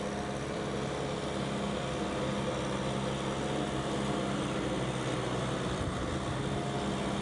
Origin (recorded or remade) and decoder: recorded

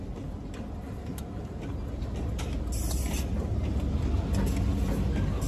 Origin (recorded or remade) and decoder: recorded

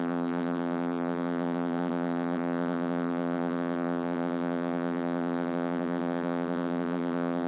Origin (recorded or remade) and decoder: remade, vocoder, BigVGAN v2